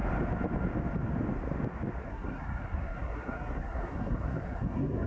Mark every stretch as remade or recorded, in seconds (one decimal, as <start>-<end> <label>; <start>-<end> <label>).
0.0-2.0 recorded; 2.0-5.1 remade